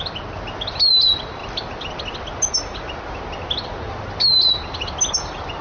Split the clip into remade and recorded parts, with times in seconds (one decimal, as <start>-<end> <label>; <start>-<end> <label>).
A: 0.0-5.6 recorded